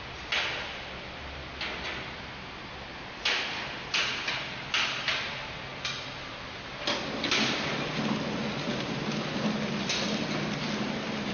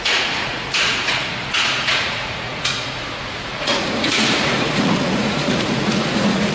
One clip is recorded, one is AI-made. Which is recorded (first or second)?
first